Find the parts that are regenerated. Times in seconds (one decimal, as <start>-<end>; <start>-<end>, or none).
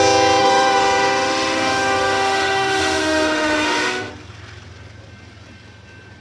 0.4-4.1